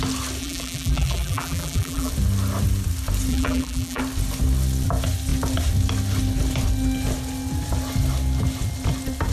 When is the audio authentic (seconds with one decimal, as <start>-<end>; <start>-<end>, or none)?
0.0-0.4; 2.1-3.3; 4.0-9.3